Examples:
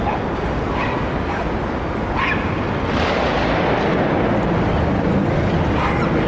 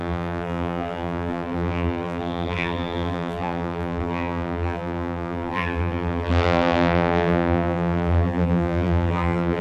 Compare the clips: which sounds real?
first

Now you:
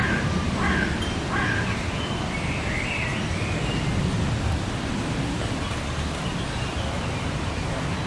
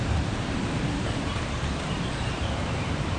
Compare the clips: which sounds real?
first